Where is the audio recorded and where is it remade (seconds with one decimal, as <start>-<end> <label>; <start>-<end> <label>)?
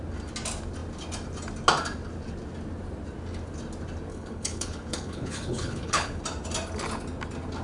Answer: 0.0-4.1 recorded; 4.1-6.2 remade; 6.2-7.6 recorded